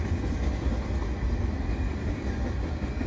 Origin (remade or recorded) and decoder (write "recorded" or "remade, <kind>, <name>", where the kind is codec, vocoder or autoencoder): recorded